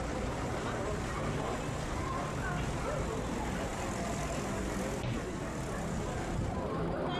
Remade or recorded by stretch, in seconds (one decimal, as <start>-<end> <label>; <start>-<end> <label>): 0.0-7.2 recorded

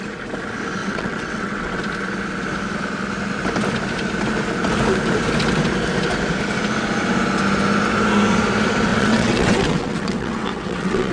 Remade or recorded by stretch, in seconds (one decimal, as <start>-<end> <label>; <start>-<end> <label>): 0.0-0.8 recorded; 0.8-1.8 remade; 1.8-8.9 recorded; 8.9-11.1 remade